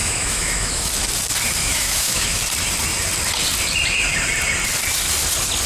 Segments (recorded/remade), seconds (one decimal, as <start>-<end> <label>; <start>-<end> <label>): 0.0-0.9 remade; 0.9-1.6 recorded; 1.6-2.4 remade; 2.4-5.7 recorded